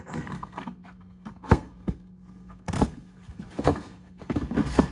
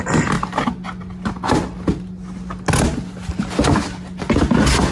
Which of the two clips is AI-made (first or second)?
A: first